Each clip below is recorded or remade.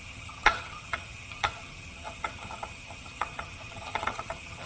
remade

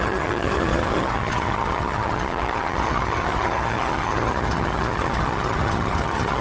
remade